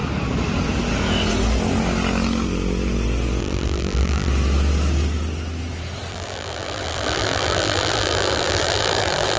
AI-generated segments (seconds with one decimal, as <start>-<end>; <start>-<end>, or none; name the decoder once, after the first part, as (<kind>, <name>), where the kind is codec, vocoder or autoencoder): 3.4-4.3 (vocoder, BigVGAN v2); 6.1-9.4